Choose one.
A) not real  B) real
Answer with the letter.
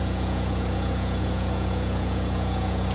A